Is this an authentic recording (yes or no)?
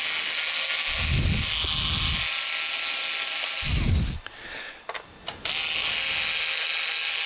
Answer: yes